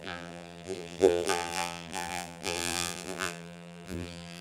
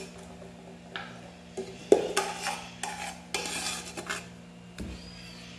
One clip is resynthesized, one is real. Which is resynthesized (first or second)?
first